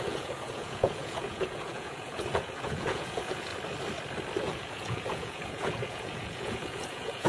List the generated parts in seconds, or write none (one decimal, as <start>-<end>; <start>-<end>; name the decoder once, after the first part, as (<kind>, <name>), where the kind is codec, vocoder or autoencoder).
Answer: 0.0-3.5 (vocoder, Vocos); 4.4-7.3